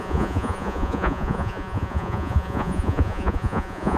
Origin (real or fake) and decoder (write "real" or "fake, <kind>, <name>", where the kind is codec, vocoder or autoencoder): fake, vocoder, Vocos